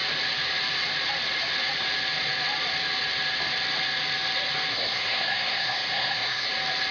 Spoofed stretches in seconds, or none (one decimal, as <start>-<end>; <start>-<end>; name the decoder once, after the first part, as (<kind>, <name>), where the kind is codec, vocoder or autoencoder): 4.7-6.5 (codec, SNAC)